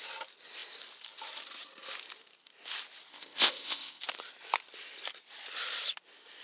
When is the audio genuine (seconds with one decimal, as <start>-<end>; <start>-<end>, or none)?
0.0-3.1; 4.0-6.4